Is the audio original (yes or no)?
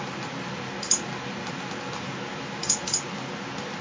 yes